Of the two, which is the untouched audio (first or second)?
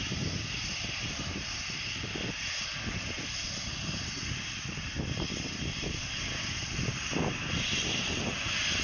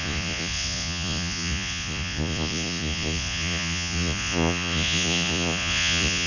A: first